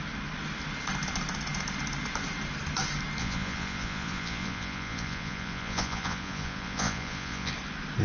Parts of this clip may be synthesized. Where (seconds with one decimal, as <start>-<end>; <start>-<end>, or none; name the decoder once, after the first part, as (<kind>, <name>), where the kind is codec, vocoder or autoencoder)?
3.2-7.5 (vocoder, Vocos)